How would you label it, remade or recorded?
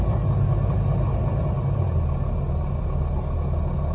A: recorded